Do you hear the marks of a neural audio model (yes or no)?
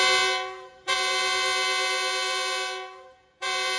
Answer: yes